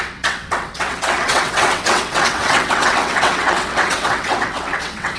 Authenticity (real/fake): fake